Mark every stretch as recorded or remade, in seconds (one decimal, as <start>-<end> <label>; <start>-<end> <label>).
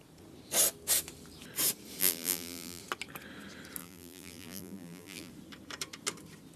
0.0-2.0 recorded; 2.0-2.8 remade; 2.8-3.8 recorded; 3.8-5.3 remade; 5.3-6.6 recorded